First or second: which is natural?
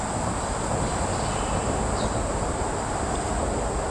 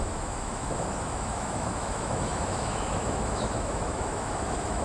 first